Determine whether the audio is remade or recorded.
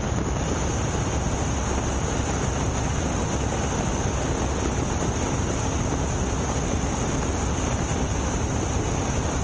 recorded